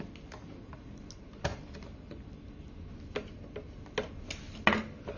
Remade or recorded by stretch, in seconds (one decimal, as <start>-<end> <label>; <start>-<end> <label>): 0.0-5.2 recorded